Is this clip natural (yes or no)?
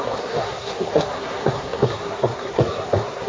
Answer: no